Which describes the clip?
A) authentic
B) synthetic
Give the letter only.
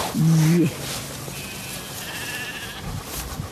A